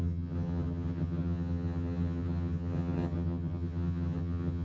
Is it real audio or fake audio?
fake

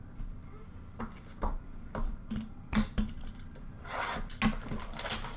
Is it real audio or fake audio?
real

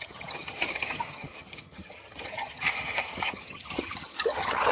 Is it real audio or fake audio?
fake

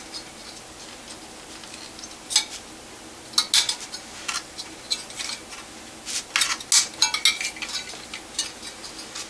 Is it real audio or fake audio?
real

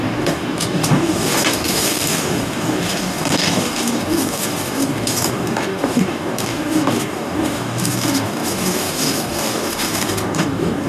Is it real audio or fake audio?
fake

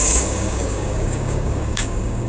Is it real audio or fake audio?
fake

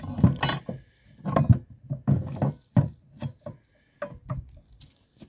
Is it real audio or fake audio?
real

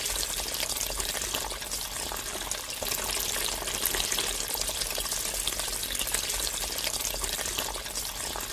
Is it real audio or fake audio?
real